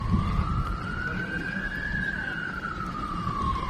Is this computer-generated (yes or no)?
yes